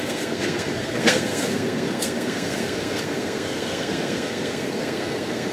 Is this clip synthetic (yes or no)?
yes